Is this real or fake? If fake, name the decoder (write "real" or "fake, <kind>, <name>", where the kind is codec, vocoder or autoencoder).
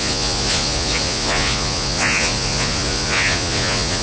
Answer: fake, vocoder, Vocos